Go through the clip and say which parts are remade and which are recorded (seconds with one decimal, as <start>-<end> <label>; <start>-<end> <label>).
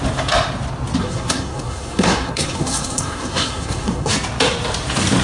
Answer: 0.0-1.0 recorded; 1.0-4.1 remade; 4.1-5.2 recorded